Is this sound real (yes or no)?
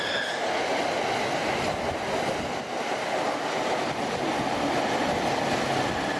yes